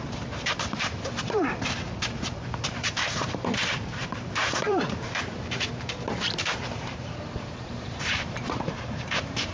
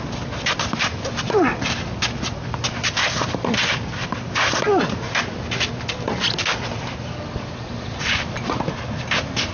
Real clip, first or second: second